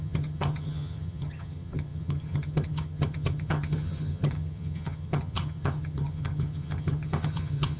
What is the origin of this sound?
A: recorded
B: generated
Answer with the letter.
B